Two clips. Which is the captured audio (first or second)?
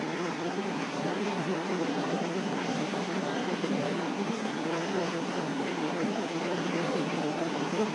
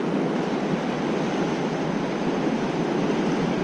second